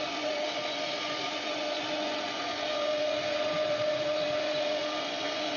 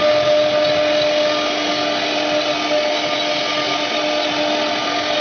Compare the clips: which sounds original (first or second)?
second